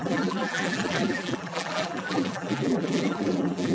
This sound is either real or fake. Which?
fake